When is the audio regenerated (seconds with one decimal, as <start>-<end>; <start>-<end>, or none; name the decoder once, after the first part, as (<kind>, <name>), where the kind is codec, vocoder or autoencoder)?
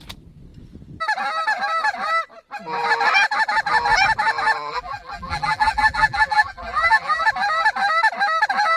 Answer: 4.7-7.2 (vocoder, BigVGAN v2)